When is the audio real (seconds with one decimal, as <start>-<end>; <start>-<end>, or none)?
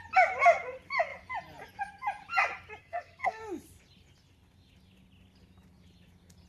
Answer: 0.0-2.8; 3.4-6.5